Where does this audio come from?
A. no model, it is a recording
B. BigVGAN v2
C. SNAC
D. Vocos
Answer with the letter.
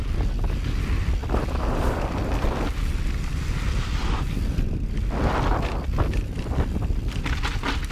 A